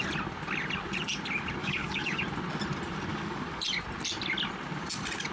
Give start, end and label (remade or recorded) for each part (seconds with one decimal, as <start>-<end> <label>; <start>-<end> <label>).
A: 0.0-1.6 recorded; 1.6-2.2 remade; 2.2-3.1 recorded; 3.1-3.6 remade; 3.6-5.3 recorded